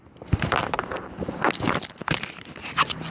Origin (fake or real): real